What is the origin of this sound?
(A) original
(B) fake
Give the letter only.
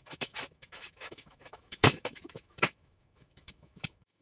B